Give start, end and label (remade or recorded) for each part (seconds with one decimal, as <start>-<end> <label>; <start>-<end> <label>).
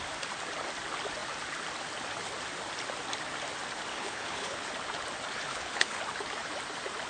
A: 0.0-3.9 recorded; 3.9-4.6 remade; 4.6-5.5 recorded; 5.5-6.0 remade; 6.0-7.1 recorded